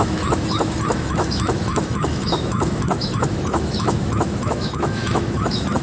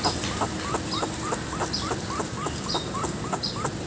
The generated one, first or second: first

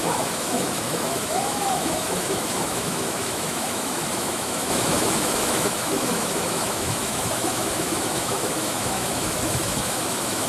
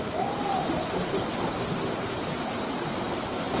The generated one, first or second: first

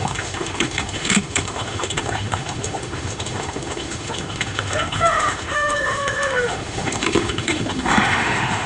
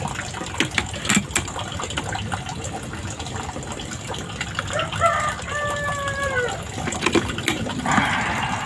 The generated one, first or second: first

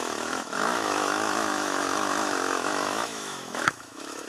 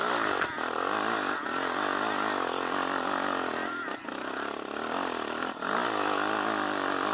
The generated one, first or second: first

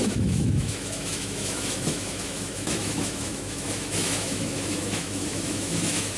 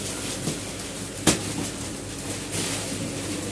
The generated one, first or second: first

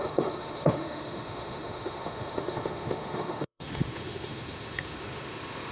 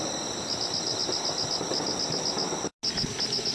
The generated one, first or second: first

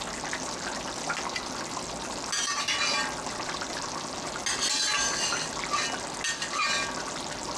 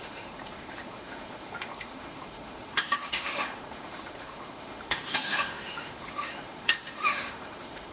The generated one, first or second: second